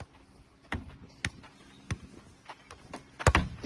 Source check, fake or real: real